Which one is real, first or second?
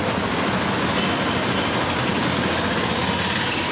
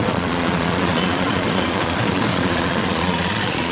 first